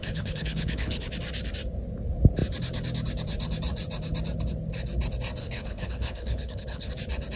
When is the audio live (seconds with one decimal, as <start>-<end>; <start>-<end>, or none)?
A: 1.1-5.4; 6.9-7.4